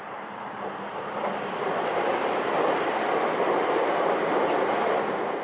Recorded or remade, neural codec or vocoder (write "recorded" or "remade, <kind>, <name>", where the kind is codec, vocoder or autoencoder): recorded